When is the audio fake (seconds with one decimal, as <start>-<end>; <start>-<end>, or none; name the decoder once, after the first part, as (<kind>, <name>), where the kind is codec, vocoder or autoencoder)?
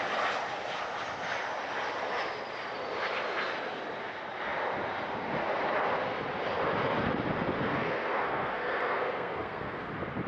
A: 7.7-9.9 (codec, SNAC)